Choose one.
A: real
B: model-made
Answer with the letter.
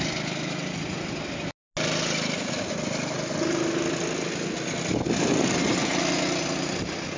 A